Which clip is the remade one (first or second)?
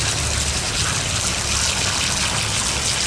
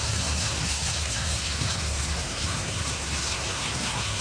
second